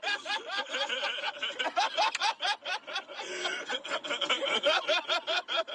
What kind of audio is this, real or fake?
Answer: real